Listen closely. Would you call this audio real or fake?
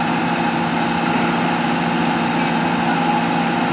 real